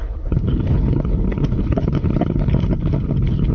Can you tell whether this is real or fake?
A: fake